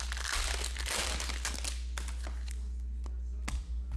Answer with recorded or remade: recorded